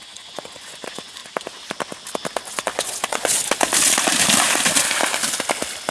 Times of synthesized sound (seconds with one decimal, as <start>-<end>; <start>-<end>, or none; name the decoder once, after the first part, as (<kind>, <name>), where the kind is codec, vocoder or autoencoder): 0.0-1.2 (vocoder, Vocos); 2.5-3.4

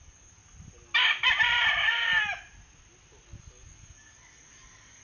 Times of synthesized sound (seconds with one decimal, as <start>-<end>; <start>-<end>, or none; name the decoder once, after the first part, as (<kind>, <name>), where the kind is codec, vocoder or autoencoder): 0.0-0.4 (codec, DAC); 3.4-5.0